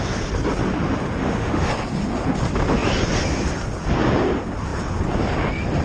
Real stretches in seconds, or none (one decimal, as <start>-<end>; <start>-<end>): 0.0-1.2; 1.7-5.8